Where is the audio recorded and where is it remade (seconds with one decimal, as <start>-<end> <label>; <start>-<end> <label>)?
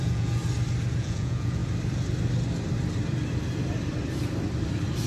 0.0-0.4 remade; 0.4-1.0 recorded; 1.0-1.6 remade; 1.6-5.1 recorded